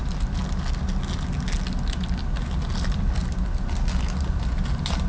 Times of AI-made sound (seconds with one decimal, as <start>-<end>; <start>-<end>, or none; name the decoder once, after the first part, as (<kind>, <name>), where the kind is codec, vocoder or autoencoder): 0.0-0.4 (vocoder, BigVGAN v2); 2.7-3.2; 4.3-5.1